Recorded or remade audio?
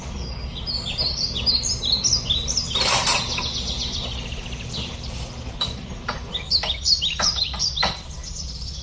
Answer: recorded